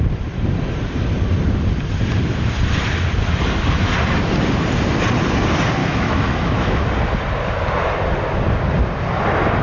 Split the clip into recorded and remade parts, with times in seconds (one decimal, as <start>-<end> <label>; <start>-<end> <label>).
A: 0.0-5.8 recorded; 5.8-6.9 remade; 6.9-9.6 recorded